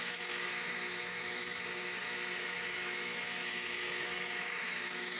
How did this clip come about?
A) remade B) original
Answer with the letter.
A